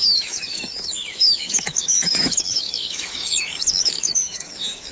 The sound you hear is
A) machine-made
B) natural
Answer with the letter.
A